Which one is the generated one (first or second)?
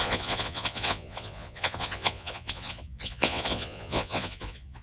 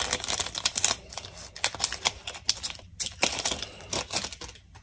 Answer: first